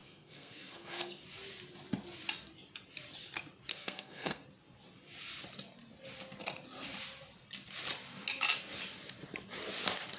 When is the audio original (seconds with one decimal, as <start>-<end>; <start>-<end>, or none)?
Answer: 1.2-3.7; 4.4-10.2